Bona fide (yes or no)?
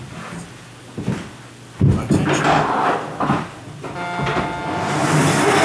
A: yes